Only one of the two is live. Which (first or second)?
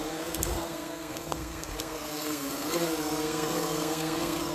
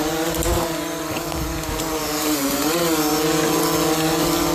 second